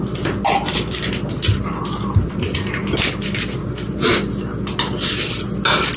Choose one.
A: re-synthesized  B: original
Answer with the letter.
B